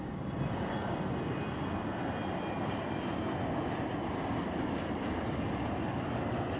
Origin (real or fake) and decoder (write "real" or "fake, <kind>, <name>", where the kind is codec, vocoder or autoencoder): real